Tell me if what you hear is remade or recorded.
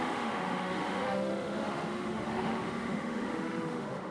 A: remade